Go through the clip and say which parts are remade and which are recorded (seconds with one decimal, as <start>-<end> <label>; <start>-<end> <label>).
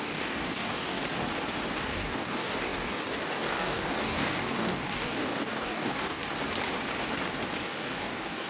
0.0-1.0 remade; 1.0-1.8 recorded; 1.8-6.2 remade; 6.2-7.6 recorded; 7.6-8.5 remade